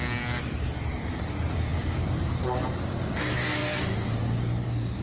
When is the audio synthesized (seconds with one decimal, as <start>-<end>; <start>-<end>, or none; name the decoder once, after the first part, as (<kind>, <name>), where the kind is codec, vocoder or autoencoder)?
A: none